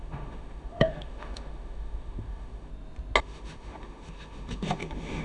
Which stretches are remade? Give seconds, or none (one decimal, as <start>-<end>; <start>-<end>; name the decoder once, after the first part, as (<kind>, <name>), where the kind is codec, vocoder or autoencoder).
0.0-2.7 (autoencoder, DAC-VAE); 3.2-5.2